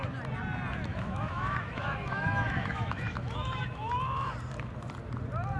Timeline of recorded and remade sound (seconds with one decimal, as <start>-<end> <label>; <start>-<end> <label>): 0.0-0.9 recorded; 0.9-4.3 remade; 4.3-5.6 recorded

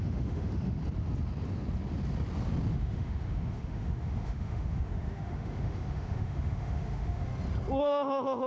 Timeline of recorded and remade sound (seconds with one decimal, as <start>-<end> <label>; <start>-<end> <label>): 0.0-0.8 remade; 0.8-2.7 recorded; 2.7-7.3 remade; 7.3-7.8 recorded; 7.8-8.5 remade

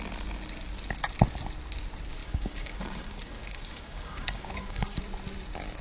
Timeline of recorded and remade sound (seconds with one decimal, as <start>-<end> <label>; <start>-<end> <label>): 0.0-2.2 recorded; 2.2-5.0 remade; 5.0-5.8 recorded

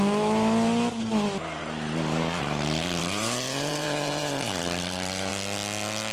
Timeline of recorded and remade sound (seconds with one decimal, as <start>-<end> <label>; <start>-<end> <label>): 0.0-3.0 recorded; 3.0-5.3 remade; 5.3-6.1 recorded

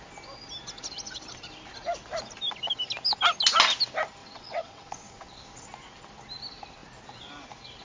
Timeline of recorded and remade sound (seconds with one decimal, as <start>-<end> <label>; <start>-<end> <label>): 0.0-4.2 recorded; 4.2-5.3 remade; 5.3-7.8 recorded

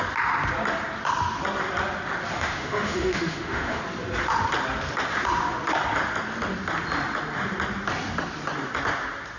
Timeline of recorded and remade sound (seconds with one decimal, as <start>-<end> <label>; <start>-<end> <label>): 0.0-2.3 recorded; 2.3-3.8 remade; 3.8-9.4 recorded

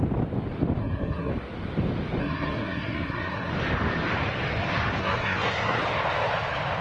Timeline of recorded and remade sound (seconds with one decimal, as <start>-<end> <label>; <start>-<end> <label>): 0.0-0.8 recorded; 0.8-1.3 remade; 1.3-2.2 recorded; 2.2-3.5 remade; 3.5-5.0 recorded; 5.0-5.8 remade; 5.8-6.8 recorded